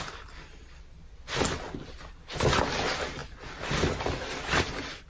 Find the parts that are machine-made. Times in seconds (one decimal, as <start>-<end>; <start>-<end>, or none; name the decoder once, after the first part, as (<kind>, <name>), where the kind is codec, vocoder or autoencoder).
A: none